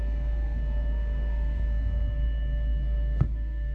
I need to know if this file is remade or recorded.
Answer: remade